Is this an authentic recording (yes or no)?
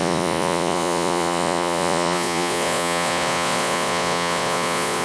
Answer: no